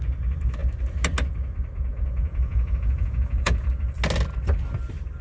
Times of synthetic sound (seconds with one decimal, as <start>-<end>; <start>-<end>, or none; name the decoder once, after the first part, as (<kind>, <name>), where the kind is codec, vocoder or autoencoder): 1.9-3.7 (vocoder, Vocos)